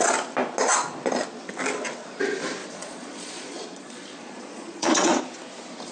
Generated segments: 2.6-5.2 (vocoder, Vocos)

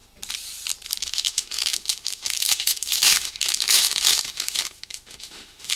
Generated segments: 1.0-5.8 (autoencoder, DAC-VAE)

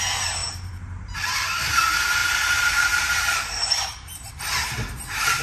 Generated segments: 0.4-1.8 (vocoder, BigVGAN v2); 2.2-4.3

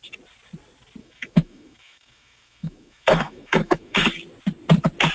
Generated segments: 1.0-4.1 (autoencoder, DAC-VAE)